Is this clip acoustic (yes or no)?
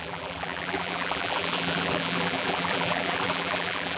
no